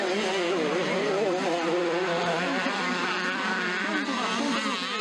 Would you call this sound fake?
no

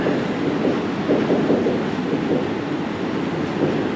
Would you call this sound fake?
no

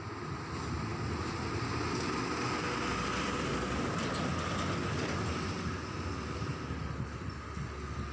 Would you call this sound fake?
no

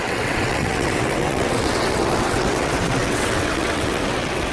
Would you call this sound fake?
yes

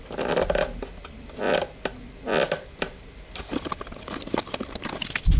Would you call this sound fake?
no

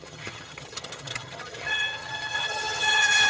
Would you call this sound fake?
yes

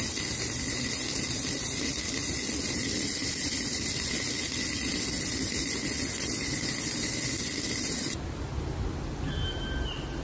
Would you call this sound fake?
no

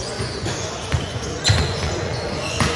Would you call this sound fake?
yes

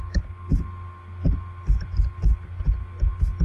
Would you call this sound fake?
no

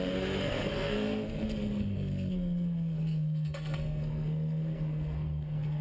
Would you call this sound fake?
yes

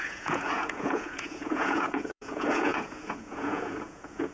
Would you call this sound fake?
yes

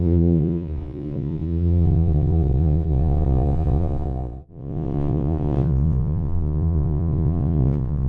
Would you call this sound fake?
yes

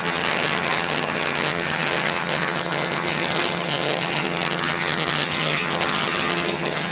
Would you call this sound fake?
yes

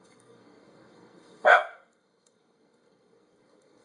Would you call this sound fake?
yes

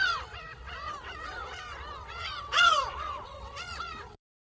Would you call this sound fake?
yes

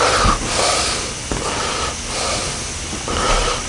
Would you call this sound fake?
no